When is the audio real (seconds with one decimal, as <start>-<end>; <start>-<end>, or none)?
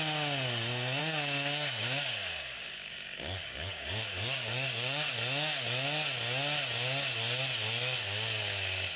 0.0-1.0; 5.1-9.0